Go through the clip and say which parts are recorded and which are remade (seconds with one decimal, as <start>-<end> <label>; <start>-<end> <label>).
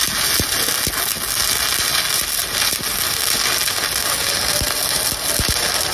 0.0-5.9 recorded